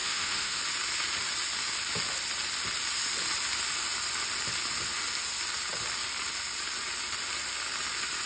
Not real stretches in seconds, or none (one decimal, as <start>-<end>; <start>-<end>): 0.0-0.6